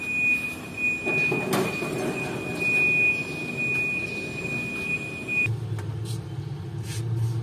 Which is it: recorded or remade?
recorded